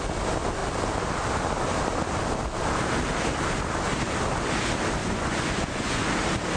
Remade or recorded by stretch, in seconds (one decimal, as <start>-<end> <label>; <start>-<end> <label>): 0.0-5.0 recorded; 5.0-6.1 remade; 6.1-6.6 recorded